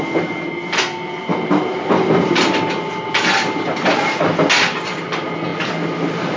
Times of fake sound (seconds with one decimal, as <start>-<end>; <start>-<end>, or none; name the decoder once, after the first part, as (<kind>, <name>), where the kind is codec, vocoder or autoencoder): none